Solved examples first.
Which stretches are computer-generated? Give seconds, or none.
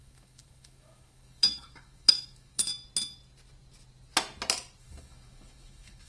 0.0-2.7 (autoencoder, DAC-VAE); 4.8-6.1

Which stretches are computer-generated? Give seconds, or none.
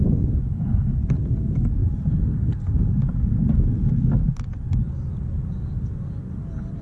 none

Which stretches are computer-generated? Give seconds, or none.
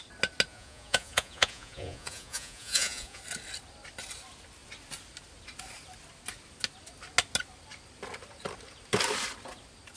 0.5-3.2 (vocoder, Vocos)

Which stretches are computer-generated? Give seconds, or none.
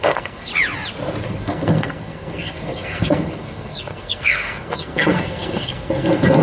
0.0-0.5 (codec, SNAC); 1.2-6.4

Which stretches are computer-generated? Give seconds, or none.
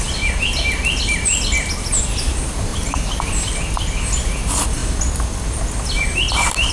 2.7-3.5 (vocoder, BigVGAN v2)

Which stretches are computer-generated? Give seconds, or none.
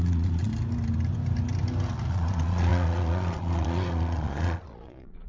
0.0-0.5 (vocoder, Vocos); 2.1-5.3